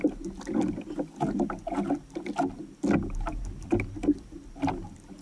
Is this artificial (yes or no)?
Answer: no